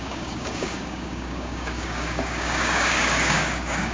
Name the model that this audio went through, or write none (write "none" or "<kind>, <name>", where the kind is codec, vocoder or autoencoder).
codec, DAC